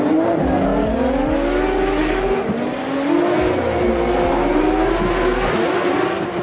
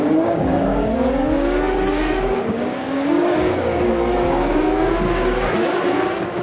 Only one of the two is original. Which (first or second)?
first